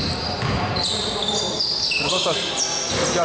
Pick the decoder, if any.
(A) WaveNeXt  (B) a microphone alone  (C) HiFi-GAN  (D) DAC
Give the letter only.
B